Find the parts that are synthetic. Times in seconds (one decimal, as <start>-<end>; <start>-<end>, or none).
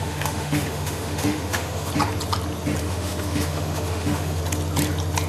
0.0-1.9; 2.8-4.4